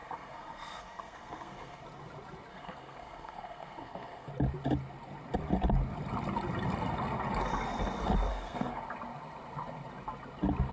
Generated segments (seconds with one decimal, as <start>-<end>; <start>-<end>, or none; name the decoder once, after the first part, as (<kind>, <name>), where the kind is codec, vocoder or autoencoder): 0.0-1.8 (codec, SNAC); 2.5-4.3; 8.3-8.8